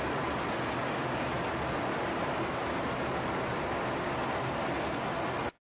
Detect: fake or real real